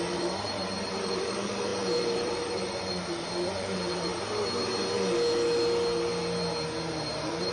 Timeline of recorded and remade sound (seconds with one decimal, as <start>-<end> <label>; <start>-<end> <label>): 0.0-4.1 remade; 4.1-6.9 recorded; 6.9-7.5 remade